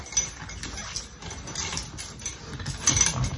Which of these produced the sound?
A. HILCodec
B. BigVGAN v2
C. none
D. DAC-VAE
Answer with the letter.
C